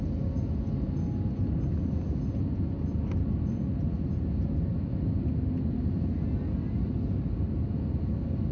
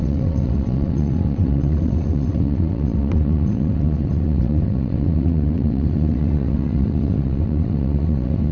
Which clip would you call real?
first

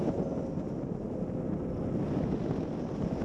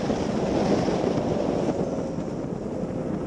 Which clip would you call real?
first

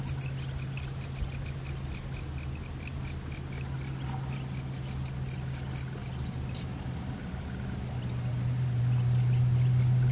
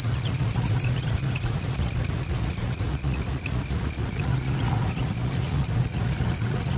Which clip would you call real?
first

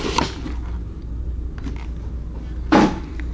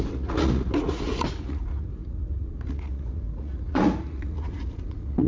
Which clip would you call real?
first